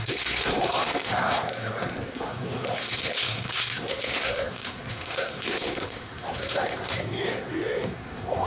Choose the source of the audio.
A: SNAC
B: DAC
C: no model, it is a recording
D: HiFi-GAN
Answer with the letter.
A